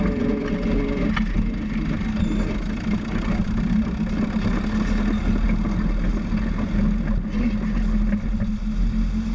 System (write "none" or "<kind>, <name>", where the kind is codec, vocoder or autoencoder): none